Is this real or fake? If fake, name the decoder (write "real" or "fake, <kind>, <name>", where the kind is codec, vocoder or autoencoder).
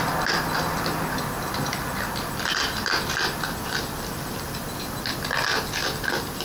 real